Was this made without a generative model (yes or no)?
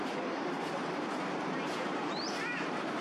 no